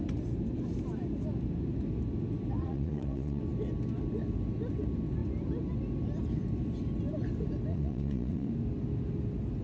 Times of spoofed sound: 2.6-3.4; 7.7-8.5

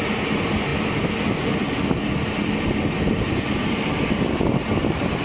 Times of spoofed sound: none

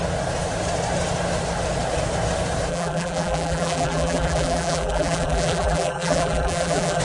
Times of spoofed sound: 2.7-7.0

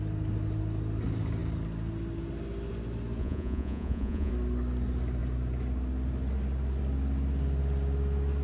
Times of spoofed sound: 3.2-4.3